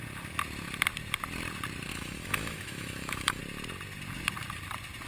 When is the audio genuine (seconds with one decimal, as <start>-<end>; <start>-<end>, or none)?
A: 0.0-1.9; 3.4-5.1